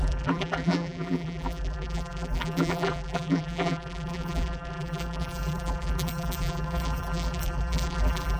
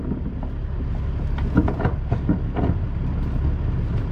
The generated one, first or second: first